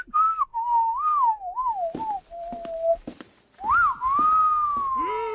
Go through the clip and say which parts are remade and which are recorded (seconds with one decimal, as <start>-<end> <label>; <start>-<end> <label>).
0.0-5.3 recorded